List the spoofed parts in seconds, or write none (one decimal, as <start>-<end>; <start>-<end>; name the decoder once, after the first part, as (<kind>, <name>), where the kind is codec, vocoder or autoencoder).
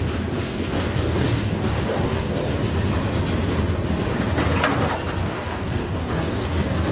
0.4-2.3 (codec, DAC); 5.2-6.9